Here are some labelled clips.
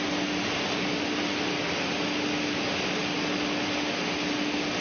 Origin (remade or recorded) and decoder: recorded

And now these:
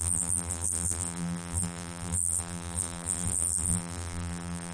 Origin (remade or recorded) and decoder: remade, vocoder, BigVGAN v2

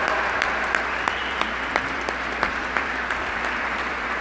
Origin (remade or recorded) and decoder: remade, vocoder, BigVGAN v2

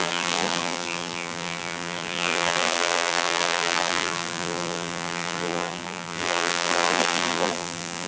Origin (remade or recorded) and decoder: remade, vocoder, BigVGAN v2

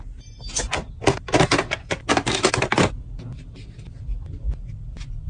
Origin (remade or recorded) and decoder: recorded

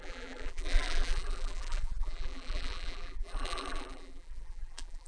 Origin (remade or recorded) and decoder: remade, vocoder, BigVGAN v2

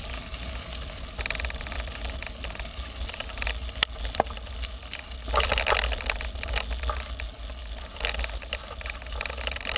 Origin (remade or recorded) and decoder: recorded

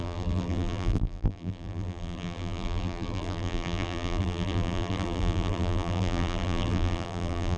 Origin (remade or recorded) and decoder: remade, vocoder, BigVGAN v2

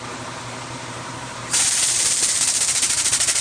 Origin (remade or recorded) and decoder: remade, vocoder, BigVGAN v2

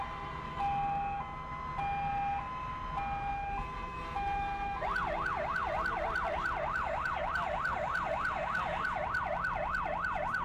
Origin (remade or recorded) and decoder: recorded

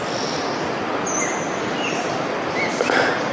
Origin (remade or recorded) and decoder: recorded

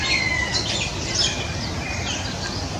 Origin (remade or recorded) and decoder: recorded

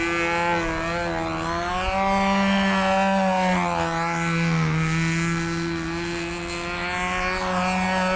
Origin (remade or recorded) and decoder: recorded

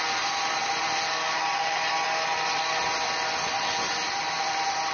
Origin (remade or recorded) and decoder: recorded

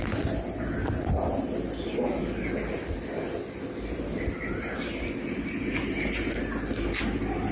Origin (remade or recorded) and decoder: recorded